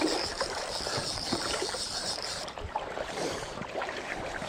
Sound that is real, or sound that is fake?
fake